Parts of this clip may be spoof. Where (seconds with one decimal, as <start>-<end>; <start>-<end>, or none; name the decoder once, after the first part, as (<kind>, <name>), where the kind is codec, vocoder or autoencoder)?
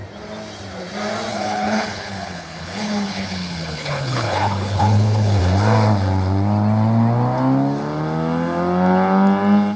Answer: 1.3-5.4 (codec, HILCodec)